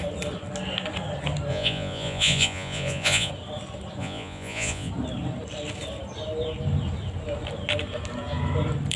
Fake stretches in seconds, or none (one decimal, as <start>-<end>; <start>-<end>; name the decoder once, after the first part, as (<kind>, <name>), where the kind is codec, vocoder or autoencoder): 1.5-3.3 (vocoder, Vocos); 4.0-4.9